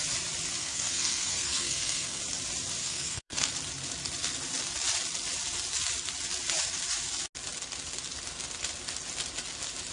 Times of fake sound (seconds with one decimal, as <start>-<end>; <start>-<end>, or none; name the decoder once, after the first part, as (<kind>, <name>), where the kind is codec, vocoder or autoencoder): 0.6-2.2 (codec, SNAC); 2.8-3.5